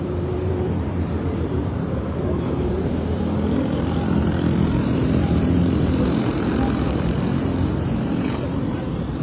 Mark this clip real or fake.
fake